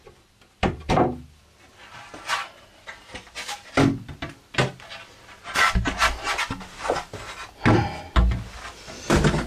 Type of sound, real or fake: real